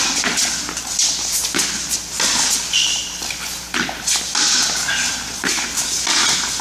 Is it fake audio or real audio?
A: real